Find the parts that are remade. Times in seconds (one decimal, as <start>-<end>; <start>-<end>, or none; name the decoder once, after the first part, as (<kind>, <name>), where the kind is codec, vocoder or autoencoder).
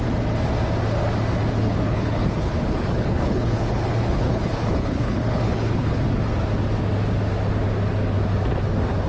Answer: 1.6-6.0 (codec, HILCodec)